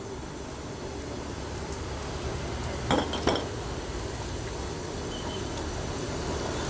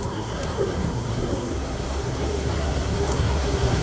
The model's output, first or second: second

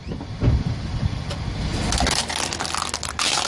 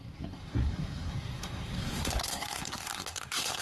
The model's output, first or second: second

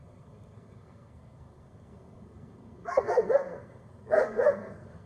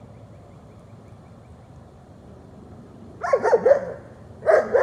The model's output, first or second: first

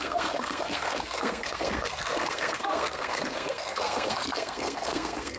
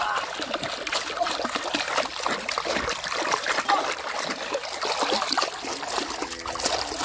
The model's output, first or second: first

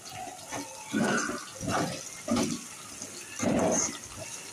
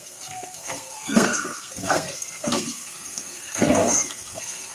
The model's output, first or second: second